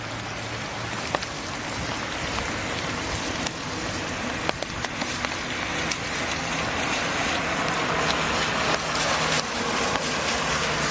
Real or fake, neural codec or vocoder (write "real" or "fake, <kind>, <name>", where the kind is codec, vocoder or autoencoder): real